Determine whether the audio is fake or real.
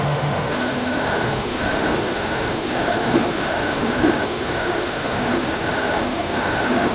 fake